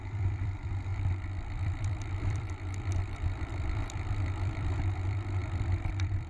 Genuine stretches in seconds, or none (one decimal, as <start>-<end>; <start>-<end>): none